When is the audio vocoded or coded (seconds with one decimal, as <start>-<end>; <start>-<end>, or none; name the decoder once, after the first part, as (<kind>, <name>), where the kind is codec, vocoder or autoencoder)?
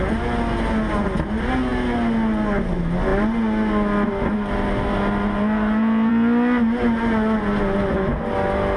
none